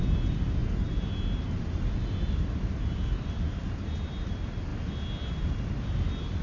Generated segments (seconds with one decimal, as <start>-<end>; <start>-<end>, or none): 0.0-4.7; 5.3-6.4